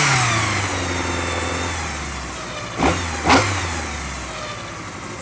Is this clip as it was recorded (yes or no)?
yes